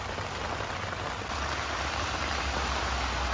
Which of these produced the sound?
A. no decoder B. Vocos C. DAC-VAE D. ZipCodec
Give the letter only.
A